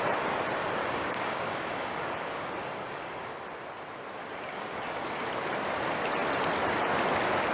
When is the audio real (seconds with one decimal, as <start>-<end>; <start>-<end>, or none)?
0.0-0.8; 3.3-4.2; 5.3-7.5